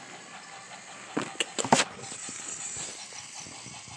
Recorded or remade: recorded